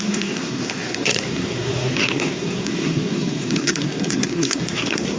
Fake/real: fake